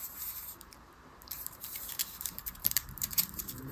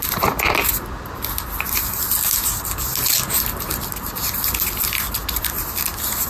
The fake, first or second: first